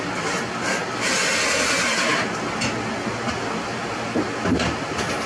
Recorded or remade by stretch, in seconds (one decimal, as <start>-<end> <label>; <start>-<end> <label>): 0.0-5.3 recorded